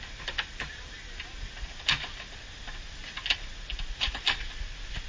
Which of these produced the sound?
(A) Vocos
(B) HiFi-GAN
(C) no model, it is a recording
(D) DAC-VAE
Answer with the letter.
C